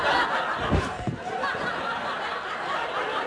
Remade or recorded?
recorded